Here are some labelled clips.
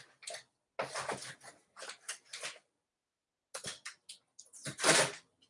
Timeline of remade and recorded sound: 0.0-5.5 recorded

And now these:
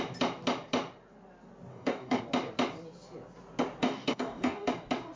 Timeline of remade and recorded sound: 0.0-1.7 recorded; 1.7-2.2 remade; 2.2-3.8 recorded; 3.8-4.7 remade; 4.7-5.2 recorded

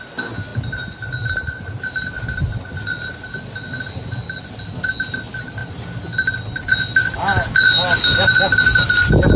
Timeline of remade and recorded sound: 0.0-9.4 recorded

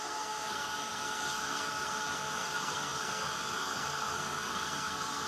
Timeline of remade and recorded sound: 0.0-5.3 remade

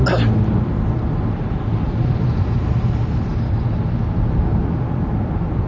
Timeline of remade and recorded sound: 0.0-5.7 recorded

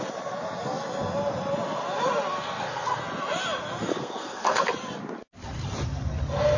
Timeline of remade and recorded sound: 0.0-2.3 recorded; 2.3-3.0 remade; 3.0-3.9 recorded; 3.9-4.7 remade; 4.7-6.6 recorded

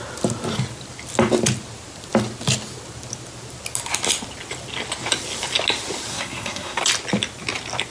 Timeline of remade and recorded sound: 0.0-6.1 recorded; 6.1-6.8 remade; 6.8-7.9 recorded

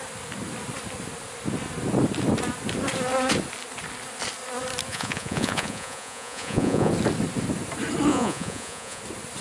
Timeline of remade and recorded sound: 0.0-4.9 recorded; 4.9-6.9 remade; 6.9-8.1 recorded; 8.1-9.0 remade; 9.0-9.4 recorded